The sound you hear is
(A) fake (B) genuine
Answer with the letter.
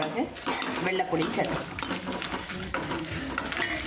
B